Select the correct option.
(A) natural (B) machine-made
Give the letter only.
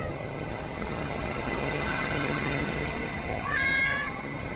B